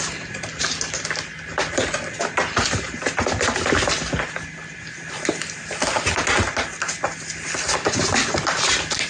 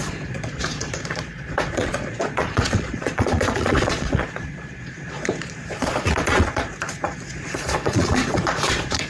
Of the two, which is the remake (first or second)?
second